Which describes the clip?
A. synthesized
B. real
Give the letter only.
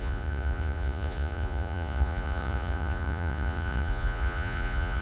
A